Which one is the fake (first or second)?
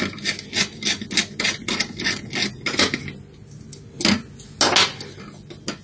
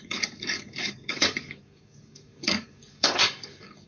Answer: second